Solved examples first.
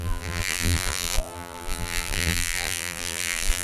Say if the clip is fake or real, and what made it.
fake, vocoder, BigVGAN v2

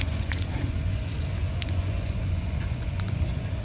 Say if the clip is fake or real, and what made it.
fake, vocoder, Vocos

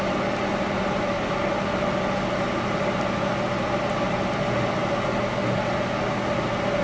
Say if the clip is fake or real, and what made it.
real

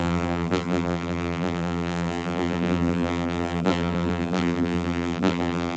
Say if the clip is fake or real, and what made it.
fake, vocoder, BigVGAN v2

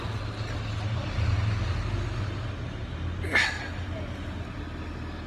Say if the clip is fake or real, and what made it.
real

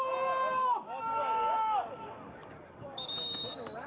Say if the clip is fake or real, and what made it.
fake, codec, DAC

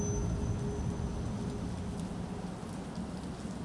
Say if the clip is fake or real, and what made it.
real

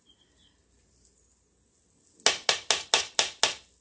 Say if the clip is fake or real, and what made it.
real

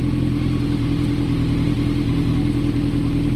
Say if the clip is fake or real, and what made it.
real